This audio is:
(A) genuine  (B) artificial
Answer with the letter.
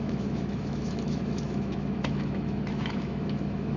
B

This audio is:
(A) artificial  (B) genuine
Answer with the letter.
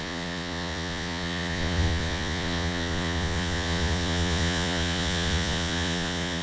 A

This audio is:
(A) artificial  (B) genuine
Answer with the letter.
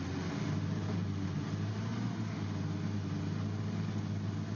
B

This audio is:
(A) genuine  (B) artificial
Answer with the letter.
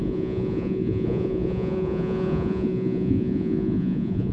B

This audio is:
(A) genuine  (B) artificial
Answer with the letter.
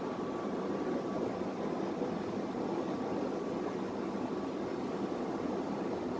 A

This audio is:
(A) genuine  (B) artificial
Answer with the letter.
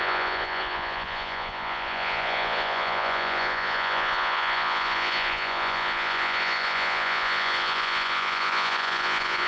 B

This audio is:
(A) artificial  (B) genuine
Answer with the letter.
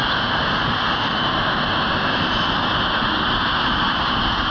B